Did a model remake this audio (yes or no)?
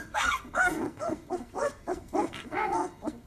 yes